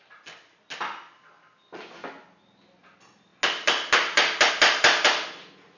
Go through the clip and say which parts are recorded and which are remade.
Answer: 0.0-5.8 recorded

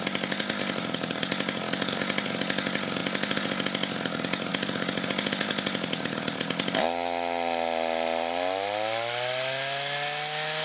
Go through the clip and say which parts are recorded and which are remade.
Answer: 0.0-10.6 recorded

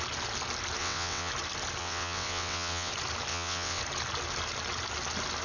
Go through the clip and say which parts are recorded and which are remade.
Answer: 0.0-0.8 recorded; 0.8-1.3 remade; 1.3-1.8 recorded; 1.8-2.9 remade; 2.9-3.3 recorded; 3.3-3.8 remade; 3.8-5.4 recorded

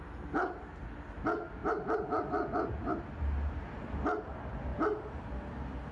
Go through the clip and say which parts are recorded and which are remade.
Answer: 0.0-5.9 recorded